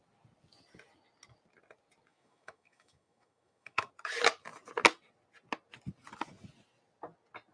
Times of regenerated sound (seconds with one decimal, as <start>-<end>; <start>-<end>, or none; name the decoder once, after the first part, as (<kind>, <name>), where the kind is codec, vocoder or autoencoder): 2.1-3.9 (autoencoder, DAC-VAE)

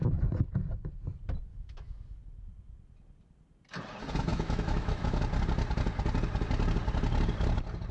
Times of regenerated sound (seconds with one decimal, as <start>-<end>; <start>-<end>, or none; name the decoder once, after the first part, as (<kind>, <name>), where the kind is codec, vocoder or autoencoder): 1.5-2.2 (autoencoder, DAC-VAE); 4.3-5.2

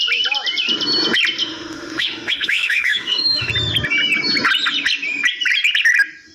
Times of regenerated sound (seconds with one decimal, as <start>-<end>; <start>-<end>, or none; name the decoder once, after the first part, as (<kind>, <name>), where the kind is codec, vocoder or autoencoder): 1.4-3.5 (autoencoder, DAC-VAE)